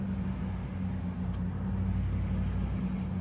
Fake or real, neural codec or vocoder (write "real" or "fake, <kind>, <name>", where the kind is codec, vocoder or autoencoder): real